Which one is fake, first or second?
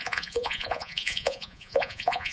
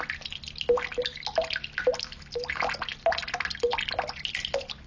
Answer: first